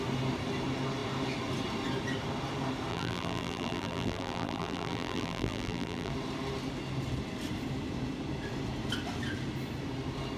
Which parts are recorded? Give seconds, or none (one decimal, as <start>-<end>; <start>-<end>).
0.0-2.9; 6.1-10.4